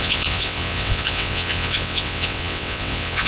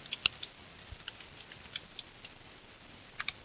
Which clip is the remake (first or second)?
first